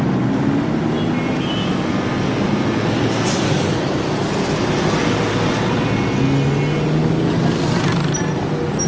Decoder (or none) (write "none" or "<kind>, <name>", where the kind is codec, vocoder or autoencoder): none